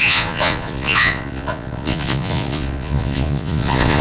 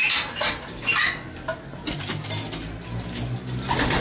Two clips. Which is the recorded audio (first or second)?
second